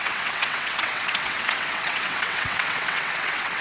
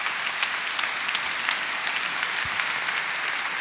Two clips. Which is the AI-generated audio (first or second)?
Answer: first